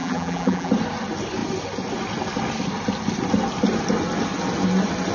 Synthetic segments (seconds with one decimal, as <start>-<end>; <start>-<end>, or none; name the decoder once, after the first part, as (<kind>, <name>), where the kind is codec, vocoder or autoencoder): 0.0-0.7 (vocoder, BigVGAN v2)